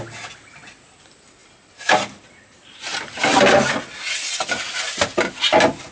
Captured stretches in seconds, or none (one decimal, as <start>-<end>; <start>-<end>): 0.0-5.9